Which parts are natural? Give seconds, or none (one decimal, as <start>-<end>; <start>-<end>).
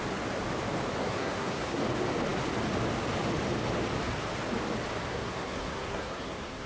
0.0-1.0; 1.8-5.1